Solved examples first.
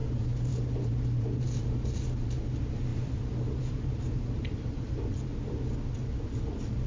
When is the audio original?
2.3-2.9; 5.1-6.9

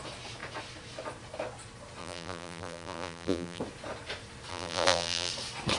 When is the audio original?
0.0-2.0; 3.6-4.5; 5.3-5.8

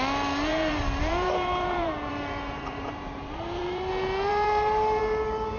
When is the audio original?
0.0-0.5; 3.9-4.3; 5.0-5.6